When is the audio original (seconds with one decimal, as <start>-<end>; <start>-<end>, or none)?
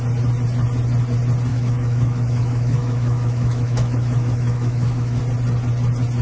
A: 0.0-1.5; 5.2-6.2